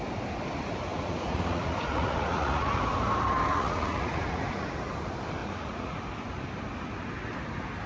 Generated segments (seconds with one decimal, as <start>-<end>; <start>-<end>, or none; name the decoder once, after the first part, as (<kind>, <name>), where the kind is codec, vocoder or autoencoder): 0.9-2.8 (vocoder, Vocos); 3.5-4.9; 5.4-6.0